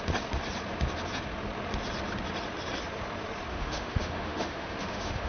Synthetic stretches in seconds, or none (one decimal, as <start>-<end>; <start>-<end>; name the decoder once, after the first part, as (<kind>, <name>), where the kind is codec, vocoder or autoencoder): 3.5-5.3 (autoencoder, DAC-VAE)